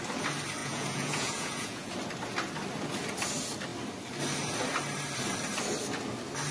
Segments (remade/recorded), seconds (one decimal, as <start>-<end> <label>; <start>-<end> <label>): 0.0-0.6 recorded; 0.6-1.9 remade; 1.9-6.5 recorded